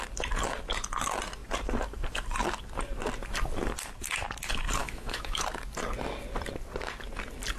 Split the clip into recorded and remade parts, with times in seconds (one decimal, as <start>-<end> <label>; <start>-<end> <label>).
0.0-4.8 recorded; 4.8-5.4 remade; 5.4-7.6 recorded